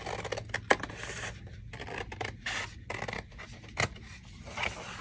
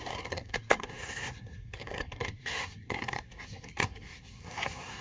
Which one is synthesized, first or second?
second